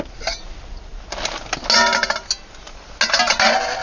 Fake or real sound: real